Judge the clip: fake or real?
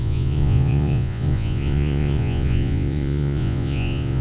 fake